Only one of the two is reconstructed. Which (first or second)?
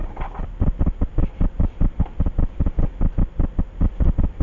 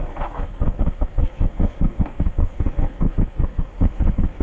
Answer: second